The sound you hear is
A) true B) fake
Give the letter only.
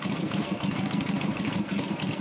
B